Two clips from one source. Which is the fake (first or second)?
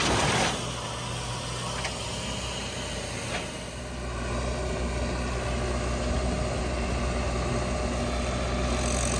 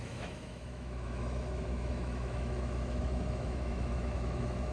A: second